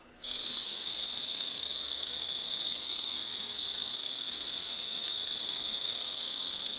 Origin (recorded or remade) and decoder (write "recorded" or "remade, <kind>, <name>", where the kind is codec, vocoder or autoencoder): remade, codec, SNAC